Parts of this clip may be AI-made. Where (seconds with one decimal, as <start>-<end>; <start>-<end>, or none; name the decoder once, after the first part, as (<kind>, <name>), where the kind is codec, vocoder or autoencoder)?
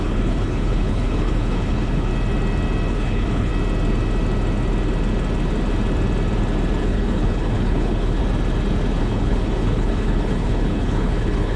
0.0-2.1 (codec, HILCodec); 2.9-3.5; 6.8-8.2; 9.0-11.6